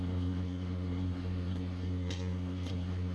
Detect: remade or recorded remade